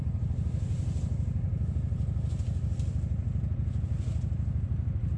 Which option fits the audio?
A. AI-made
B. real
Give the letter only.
B